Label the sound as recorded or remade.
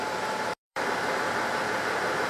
remade